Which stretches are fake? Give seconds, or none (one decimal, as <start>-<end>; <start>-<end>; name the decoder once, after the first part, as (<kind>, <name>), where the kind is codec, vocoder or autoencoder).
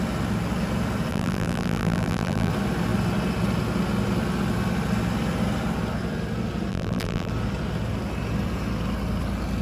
1.1-2.5 (vocoder, BigVGAN v2); 6.7-7.3